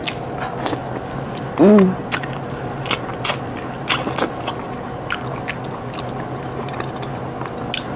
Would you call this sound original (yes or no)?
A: yes